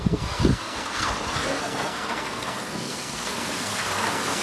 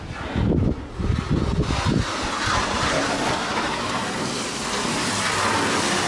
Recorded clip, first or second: second